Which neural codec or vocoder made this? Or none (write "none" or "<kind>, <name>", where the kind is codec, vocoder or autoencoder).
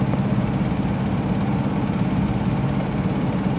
none